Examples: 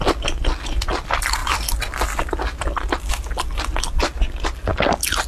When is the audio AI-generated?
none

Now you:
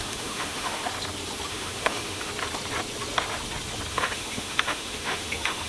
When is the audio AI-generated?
0.0-0.8 (autoencoder, DAC-VAE); 1.5-2.3; 3.9-5.7

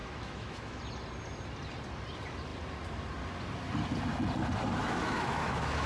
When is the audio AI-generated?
0.0-0.8 (autoencoder, DAC-VAE); 4.8-5.9

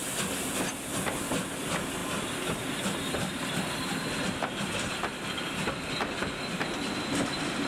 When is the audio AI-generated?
none